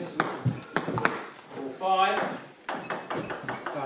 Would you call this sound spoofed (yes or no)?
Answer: no